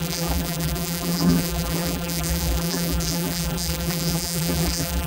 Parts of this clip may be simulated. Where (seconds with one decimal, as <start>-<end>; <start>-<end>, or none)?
0.0-5.1